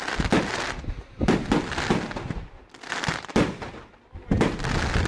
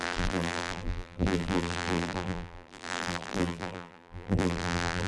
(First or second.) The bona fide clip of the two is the first